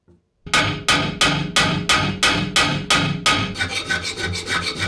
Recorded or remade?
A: recorded